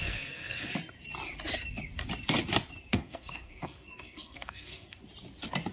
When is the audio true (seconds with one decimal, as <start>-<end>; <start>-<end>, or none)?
0.7-2.9; 5.0-5.7